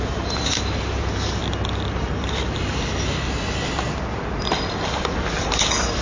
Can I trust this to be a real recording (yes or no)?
yes